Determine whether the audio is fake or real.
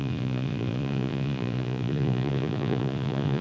fake